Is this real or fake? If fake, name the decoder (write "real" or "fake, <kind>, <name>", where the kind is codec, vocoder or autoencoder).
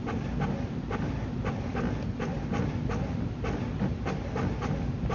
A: real